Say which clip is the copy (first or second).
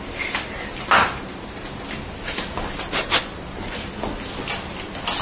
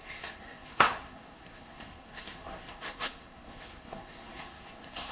second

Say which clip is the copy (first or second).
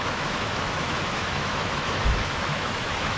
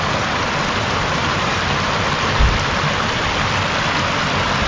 first